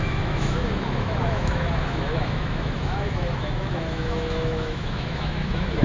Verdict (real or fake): fake